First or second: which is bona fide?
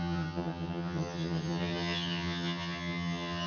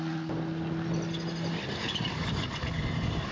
second